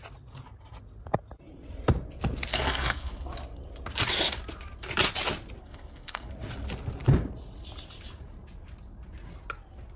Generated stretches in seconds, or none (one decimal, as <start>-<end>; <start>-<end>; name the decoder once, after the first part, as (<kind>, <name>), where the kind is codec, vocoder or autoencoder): 2.5-3.3 (codec, SNAC); 5.6-6.3